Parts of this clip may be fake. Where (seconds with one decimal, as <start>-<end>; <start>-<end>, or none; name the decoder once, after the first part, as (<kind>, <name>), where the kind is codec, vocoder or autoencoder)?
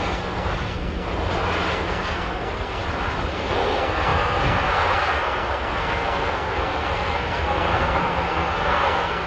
0.0-1.1 (codec, SNAC); 1.7-2.8; 3.3-9.3